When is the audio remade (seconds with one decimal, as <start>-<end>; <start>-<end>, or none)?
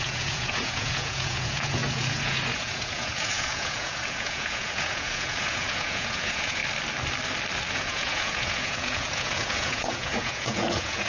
0.0-6.6; 7.7-11.1